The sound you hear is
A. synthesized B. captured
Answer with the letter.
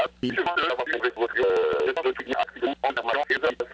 B